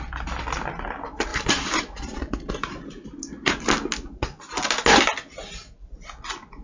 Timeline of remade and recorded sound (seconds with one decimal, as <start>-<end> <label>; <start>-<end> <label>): 0.0-1.3 recorded; 1.3-2.5 remade; 2.5-6.6 recorded